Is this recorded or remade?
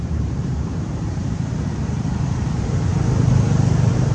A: remade